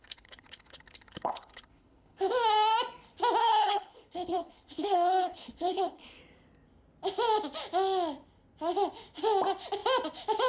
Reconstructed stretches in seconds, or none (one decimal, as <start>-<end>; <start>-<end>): 0.0-2.2; 3.4-6.2